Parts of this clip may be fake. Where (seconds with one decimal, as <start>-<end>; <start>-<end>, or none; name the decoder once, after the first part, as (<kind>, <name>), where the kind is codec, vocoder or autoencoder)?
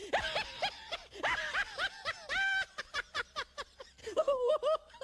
4.0-4.5 (codec, SNAC)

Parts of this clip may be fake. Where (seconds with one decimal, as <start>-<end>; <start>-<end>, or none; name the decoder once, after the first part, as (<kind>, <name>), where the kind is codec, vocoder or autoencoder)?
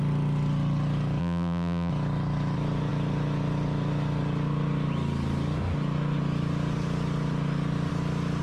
1.2-1.9 (vocoder, BigVGAN v2)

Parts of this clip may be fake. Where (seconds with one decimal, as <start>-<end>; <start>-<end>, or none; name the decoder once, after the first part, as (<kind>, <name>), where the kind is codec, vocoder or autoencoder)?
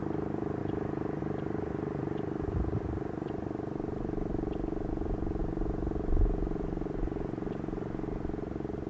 0.0-0.6 (vocoder, BigVGAN v2); 1.2-4.3; 4.9-5.4; 8.1-8.9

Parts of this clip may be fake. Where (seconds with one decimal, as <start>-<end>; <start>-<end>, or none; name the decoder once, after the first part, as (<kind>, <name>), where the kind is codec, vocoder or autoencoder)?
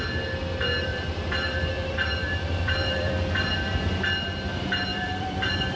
0.9-1.7 (vocoder, BigVGAN v2); 2.2-3.1; 4.9-5.8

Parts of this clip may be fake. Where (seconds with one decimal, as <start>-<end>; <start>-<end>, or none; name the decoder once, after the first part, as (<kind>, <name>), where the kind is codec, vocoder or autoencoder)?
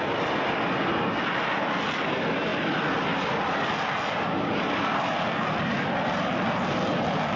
none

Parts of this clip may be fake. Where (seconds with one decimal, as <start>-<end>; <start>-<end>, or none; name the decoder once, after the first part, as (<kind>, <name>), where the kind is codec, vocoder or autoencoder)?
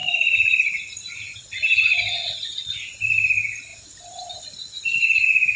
none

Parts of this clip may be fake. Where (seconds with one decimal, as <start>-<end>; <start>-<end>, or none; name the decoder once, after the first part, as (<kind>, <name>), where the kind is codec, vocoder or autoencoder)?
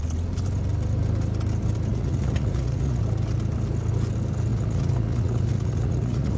1.9-3.0 (vocoder, Vocos); 4.5-6.4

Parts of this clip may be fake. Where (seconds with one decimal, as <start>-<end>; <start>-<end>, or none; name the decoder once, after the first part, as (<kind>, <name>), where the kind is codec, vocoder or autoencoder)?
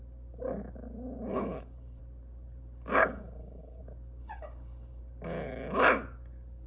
1.3-2.0 (codec, HILCodec); 3.0-3.8; 4.2-5.0